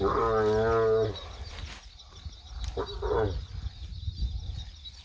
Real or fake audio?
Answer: real